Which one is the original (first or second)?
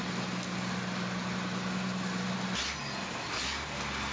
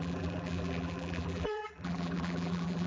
first